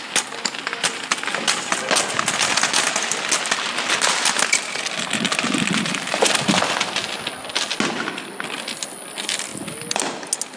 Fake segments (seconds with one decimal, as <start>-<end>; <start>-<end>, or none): none

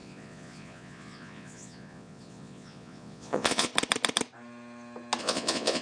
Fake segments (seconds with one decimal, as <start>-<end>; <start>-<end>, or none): 0.0-3.7; 5.2-5.8

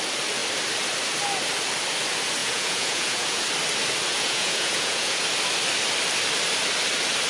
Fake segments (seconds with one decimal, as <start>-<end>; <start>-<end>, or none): 2.4-3.4; 4.1-5.2

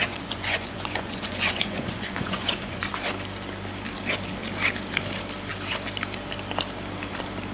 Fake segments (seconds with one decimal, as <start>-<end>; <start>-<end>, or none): 0.0-2.9

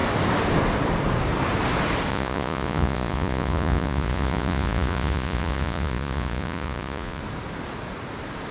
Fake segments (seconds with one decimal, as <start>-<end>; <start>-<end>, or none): 2.1-7.2

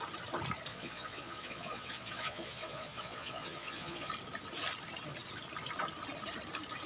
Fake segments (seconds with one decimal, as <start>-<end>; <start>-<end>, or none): 0.7-4.1